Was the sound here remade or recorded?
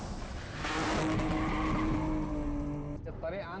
recorded